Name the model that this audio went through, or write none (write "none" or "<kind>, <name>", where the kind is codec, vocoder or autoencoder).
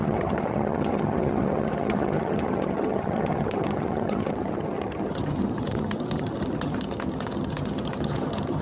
vocoder, HiFi-GAN